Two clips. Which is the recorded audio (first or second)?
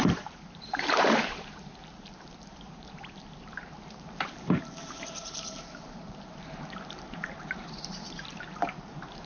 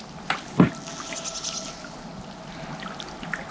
second